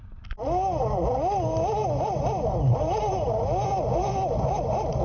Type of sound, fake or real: real